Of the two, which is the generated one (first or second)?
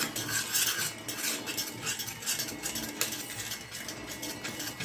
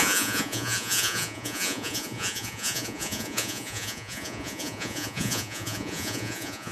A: second